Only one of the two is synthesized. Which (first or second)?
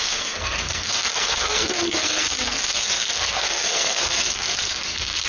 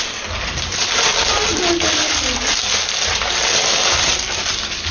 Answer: first